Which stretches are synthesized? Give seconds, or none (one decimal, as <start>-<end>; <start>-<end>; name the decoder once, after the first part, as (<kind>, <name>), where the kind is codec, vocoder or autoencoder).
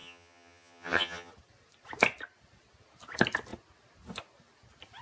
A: 0.0-1.3 (vocoder, HiFi-GAN)